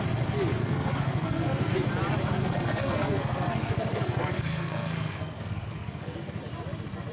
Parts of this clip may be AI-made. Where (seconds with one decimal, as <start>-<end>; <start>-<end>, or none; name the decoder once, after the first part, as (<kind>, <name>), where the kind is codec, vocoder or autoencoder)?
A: 0.6-1.7 (codec, SNAC); 2.4-6.4